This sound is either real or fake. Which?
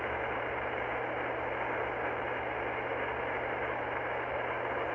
real